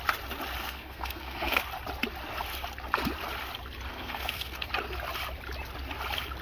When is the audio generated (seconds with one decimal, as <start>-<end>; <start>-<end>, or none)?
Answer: 0.6-1.6; 3.9-4.7